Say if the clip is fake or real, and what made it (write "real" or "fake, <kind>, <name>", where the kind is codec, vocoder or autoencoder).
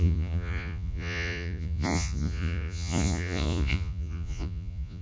fake, vocoder, Vocos